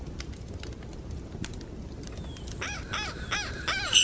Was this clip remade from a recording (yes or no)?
no